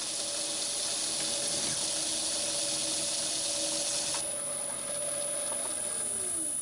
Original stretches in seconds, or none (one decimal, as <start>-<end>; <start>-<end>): 0.0-6.6